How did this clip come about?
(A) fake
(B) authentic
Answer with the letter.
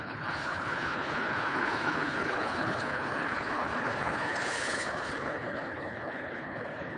A